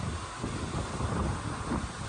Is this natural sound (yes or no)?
yes